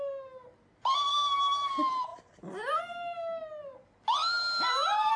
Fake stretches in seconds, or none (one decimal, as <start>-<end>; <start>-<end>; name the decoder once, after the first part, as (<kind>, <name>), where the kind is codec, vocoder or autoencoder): 1.1-1.7 (autoencoder, DAC-VAE)